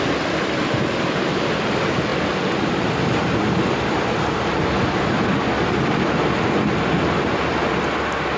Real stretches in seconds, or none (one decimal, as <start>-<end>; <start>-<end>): 0.0-8.4